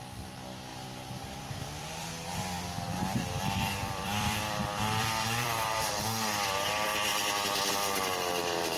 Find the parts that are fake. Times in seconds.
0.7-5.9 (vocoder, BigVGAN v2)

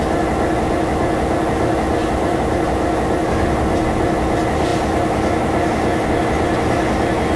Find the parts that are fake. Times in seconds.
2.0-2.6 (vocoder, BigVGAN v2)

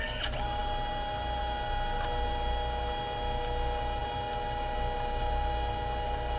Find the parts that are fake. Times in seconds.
none

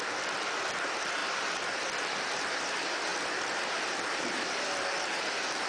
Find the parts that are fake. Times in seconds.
1.2-2.4 (vocoder, BigVGAN v2)

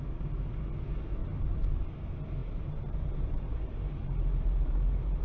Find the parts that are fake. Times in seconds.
1.2-1.9 (vocoder, BigVGAN v2); 2.4-3.4; 4.0-5.2